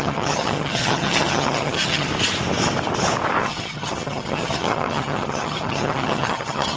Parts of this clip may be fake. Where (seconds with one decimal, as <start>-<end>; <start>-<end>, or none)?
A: 0.0-2.1; 3.4-6.8